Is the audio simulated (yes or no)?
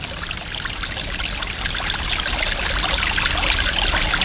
no